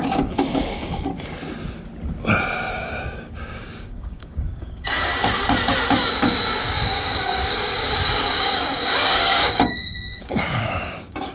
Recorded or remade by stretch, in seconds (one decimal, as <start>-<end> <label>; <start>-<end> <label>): 0.0-1.1 remade; 1.1-2.7 recorded; 2.7-5.1 remade; 5.1-6.6 recorded; 6.6-11.3 remade